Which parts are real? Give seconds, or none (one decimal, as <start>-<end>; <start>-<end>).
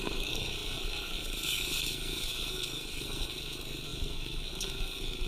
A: none